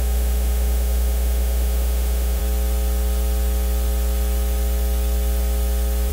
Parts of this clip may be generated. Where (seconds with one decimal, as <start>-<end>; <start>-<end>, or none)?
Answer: 0.0-2.4